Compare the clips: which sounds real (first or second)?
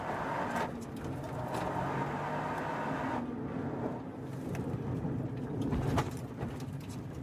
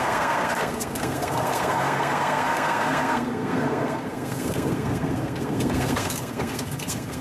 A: first